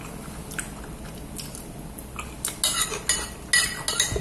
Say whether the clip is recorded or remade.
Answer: recorded